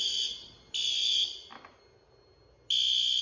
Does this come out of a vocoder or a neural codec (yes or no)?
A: no